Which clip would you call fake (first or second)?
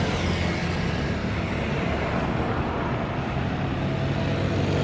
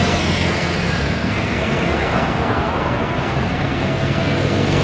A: second